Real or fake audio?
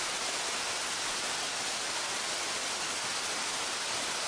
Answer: real